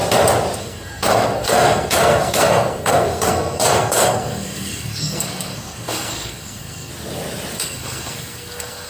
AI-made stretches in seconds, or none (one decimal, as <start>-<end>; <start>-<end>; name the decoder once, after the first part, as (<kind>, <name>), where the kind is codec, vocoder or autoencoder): 0.6-6.9 (codec, SNAC); 7.6-8.9